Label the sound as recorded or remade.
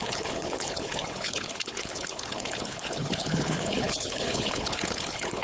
remade